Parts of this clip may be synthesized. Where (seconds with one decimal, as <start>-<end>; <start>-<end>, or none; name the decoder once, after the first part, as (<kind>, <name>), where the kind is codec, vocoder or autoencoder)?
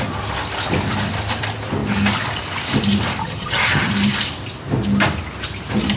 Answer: 3.2-3.9 (vocoder, HiFi-GAN)